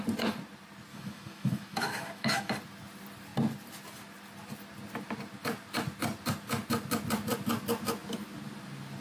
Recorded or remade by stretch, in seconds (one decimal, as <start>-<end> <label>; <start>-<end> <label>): 0.0-0.9 recorded; 0.9-2.5 remade; 2.5-9.0 recorded